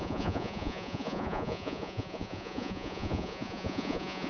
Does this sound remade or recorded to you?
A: remade